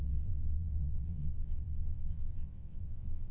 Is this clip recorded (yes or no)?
no